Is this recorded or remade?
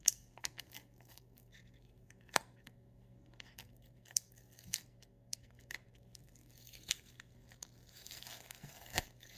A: remade